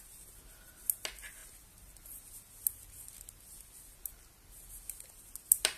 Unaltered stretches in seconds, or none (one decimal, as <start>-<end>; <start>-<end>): 0.0-5.8